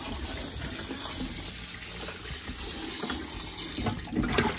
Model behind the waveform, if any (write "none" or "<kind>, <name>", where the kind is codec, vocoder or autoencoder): none